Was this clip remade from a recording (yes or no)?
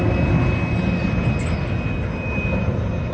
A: no